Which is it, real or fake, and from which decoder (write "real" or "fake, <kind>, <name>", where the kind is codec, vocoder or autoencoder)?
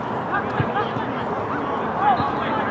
fake, vocoder, BigVGAN v2